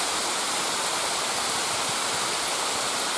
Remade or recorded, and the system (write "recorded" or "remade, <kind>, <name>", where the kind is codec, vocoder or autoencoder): recorded